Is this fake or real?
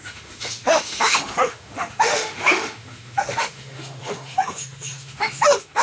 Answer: fake